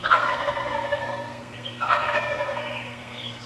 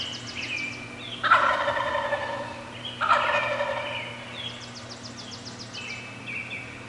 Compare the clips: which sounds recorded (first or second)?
second